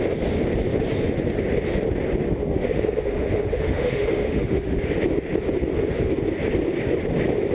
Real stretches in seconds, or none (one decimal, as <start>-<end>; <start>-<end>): 0.0-2.4; 4.8-7.5